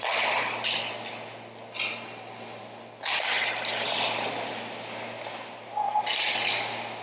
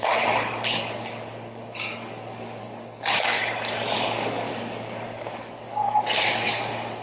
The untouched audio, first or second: first